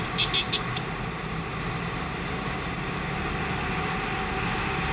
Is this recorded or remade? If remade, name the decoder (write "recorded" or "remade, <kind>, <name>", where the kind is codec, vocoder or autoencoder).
recorded